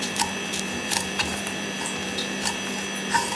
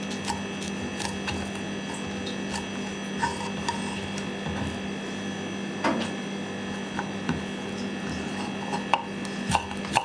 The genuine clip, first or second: second